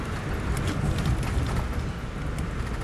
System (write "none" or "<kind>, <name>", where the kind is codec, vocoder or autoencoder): none